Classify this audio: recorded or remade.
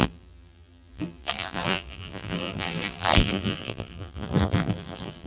remade